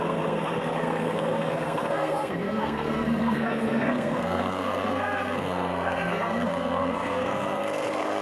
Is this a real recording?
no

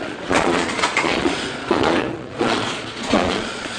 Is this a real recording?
no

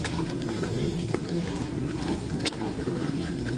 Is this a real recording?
no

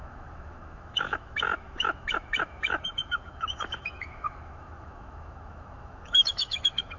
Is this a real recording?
no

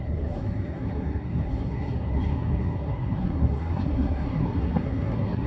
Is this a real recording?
no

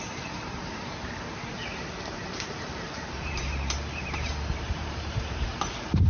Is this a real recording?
no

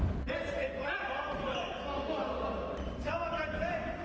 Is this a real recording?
yes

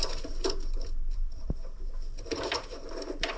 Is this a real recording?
no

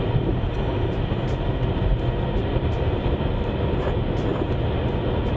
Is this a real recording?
yes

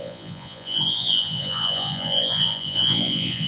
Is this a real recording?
no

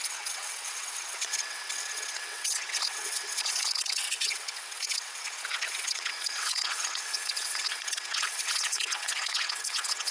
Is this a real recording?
no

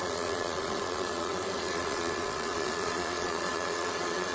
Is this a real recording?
no